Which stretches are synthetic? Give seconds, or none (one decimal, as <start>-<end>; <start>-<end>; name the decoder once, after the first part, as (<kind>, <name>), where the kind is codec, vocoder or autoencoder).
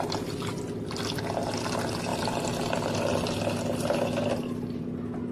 none